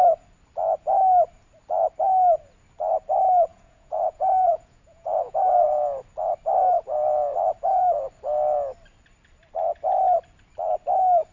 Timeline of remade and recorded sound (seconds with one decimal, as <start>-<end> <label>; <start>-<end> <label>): 0.0-3.5 recorded; 3.5-5.4 remade; 5.4-11.3 recorded